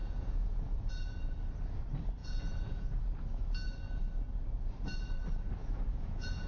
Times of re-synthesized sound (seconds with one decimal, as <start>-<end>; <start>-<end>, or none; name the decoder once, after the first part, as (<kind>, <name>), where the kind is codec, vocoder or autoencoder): 0.0-0.9 (vocoder, Vocos); 2.2-3.0; 5.6-6.5